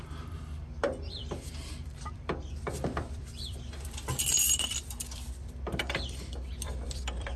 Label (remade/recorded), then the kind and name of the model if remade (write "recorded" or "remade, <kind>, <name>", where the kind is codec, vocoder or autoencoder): remade, vocoder, BigVGAN v2